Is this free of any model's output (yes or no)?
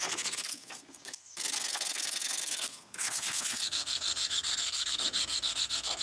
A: no